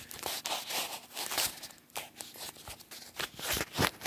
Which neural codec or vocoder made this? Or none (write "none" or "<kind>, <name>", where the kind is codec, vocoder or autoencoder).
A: none